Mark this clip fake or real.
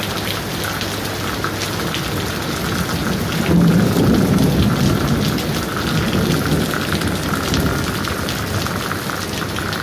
real